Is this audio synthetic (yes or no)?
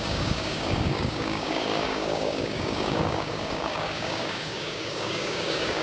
yes